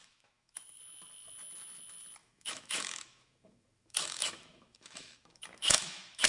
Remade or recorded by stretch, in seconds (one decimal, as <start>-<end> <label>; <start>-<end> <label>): 0.0-0.8 remade; 0.8-2.2 recorded; 2.2-6.3 remade